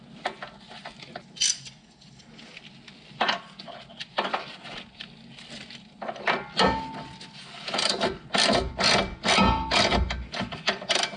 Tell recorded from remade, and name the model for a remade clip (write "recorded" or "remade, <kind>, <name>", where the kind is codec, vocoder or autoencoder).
recorded